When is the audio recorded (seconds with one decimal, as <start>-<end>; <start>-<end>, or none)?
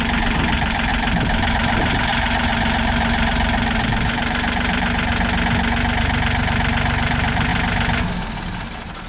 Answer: 0.9-1.5; 5.1-6.0; 7.5-9.1